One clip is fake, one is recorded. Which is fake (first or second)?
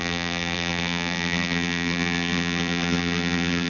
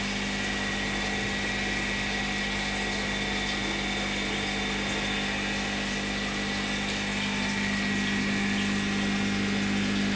first